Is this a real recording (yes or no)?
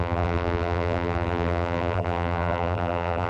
no